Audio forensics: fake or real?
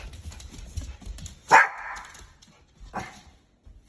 real